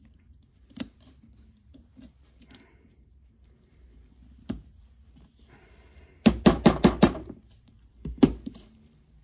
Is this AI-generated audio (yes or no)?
yes